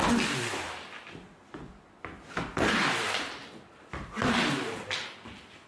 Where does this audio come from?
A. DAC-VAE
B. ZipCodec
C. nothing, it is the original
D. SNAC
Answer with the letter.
C